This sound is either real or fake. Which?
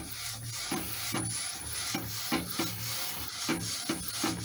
real